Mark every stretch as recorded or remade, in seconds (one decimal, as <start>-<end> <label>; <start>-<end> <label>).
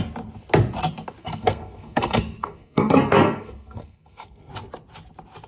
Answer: 0.0-1.2 recorded; 1.2-4.5 remade; 4.5-5.5 recorded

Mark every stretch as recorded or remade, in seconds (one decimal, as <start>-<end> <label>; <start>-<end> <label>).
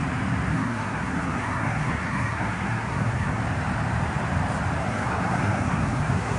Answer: 0.0-0.5 recorded; 0.5-3.4 remade; 3.4-4.8 recorded; 4.8-6.4 remade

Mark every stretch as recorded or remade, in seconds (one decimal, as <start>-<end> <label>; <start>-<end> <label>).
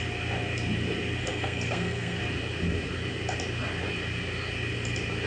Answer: 0.0-1.2 recorded; 1.2-2.2 remade; 2.2-5.3 recorded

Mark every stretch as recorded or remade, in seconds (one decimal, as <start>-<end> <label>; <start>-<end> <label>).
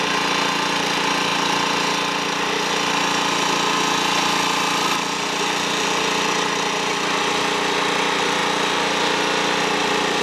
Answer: 0.0-10.2 recorded